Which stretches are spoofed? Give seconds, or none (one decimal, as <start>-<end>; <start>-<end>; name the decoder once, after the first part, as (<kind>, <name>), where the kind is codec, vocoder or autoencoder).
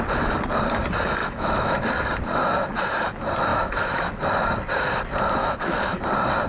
1.2-1.8 (autoencoder, DAC-VAE); 3.5-4.1; 5.4-6.0